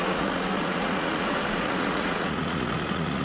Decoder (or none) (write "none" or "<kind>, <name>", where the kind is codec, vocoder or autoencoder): vocoder, Vocos